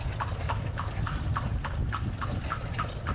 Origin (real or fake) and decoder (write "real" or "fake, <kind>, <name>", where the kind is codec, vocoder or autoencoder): real